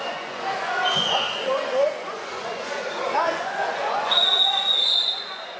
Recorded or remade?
remade